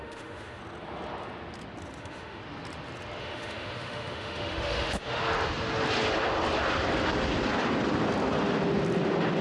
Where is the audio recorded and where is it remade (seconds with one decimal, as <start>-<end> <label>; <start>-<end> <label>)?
0.0-0.6 remade; 0.6-2.0 recorded; 2.0-2.4 remade; 2.4-3.2 recorded; 3.2-5.2 remade; 5.2-9.4 recorded

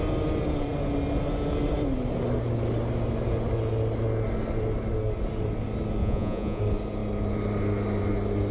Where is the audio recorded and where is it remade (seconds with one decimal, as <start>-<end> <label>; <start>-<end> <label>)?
0.0-6.0 recorded; 6.0-6.6 remade; 6.6-8.5 recorded

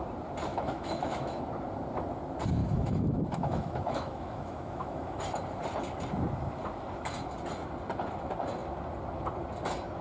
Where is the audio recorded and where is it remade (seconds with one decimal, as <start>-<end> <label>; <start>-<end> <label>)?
0.0-0.5 recorded; 0.5-1.4 remade; 1.4-2.6 recorded; 2.6-5.2 remade; 5.2-10.0 recorded

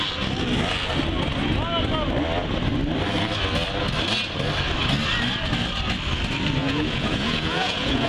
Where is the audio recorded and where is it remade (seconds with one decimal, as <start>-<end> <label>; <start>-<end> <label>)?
0.0-6.6 recorded; 6.6-8.1 remade

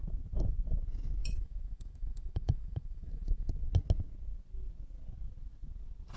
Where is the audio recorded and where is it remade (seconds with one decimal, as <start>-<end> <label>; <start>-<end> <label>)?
0.0-1.2 recorded; 1.2-3.5 remade; 3.5-6.2 recorded